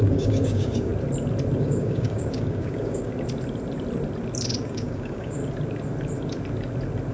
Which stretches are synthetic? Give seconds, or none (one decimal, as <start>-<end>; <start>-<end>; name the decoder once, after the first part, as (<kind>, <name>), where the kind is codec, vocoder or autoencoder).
0.0-0.9 (codec, DAC); 1.6-3.1; 4.6-5.4